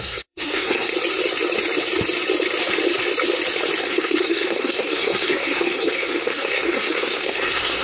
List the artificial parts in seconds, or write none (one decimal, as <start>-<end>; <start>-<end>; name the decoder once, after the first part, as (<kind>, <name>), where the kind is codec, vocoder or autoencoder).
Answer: 0.0-0.9 (codec, SNAC); 3.8-7.8